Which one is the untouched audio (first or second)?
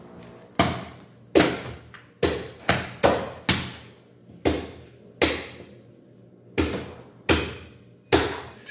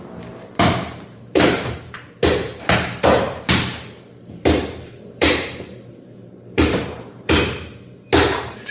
first